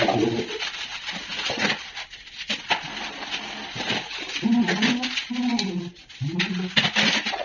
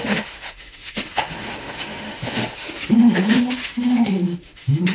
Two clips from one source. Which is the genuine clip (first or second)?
first